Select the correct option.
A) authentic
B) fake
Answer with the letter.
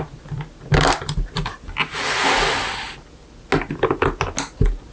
A